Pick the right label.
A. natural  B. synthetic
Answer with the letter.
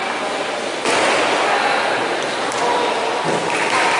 A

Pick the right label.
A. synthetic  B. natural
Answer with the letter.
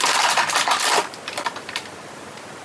A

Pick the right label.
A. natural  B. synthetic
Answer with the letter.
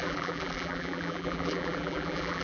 B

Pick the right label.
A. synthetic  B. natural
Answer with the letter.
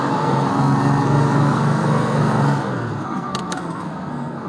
A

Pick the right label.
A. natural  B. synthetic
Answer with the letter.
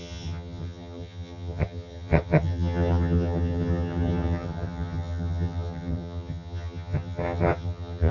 B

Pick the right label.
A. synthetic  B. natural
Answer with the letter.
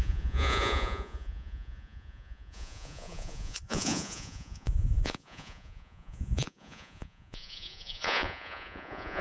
A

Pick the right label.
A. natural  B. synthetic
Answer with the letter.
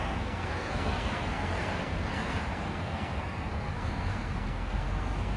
B